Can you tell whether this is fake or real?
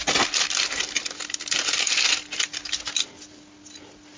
real